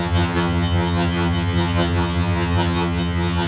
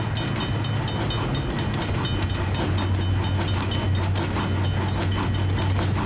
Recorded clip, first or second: second